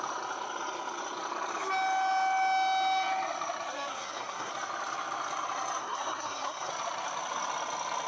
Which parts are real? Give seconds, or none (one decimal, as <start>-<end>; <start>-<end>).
0.0-3.9; 4.5-5.8; 6.7-8.1